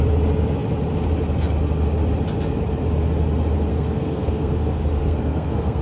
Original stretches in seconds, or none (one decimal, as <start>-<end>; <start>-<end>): 0.0-3.7